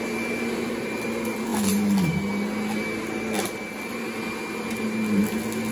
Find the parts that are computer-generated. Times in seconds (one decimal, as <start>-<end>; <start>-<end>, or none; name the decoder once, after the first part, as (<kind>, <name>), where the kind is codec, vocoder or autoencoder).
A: none